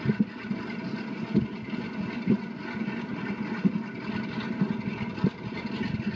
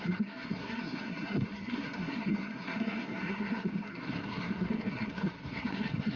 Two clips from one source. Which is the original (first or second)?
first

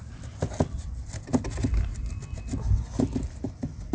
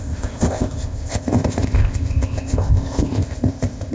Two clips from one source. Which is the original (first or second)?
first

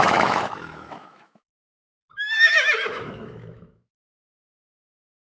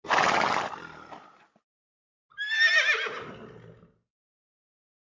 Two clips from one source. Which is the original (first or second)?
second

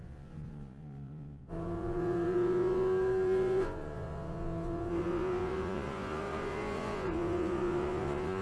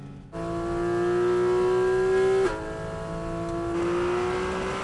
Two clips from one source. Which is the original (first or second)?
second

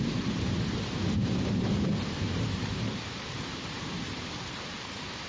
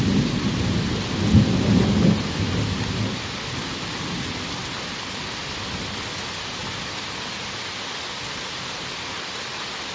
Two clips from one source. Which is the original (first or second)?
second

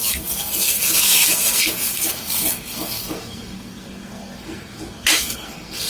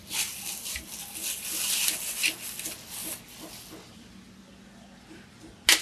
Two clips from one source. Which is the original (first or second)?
second